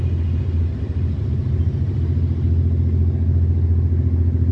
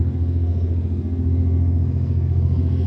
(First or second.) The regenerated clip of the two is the second